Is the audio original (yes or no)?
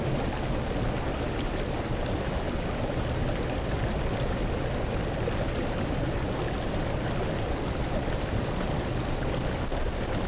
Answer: yes